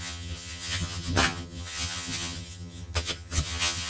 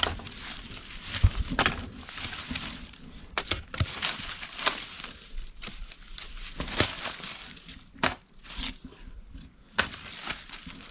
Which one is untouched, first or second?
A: second